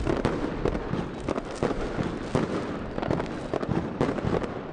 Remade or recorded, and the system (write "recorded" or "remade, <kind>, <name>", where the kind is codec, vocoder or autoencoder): recorded